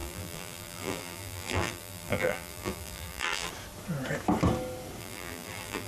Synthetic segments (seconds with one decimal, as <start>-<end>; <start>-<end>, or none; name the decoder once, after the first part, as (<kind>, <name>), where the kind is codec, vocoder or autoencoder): 0.0-3.5 (vocoder, BigVGAN v2); 5.0-5.9